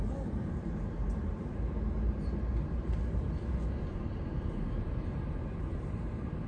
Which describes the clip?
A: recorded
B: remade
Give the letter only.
B